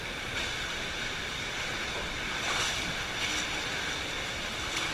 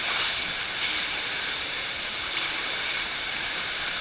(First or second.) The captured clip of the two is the first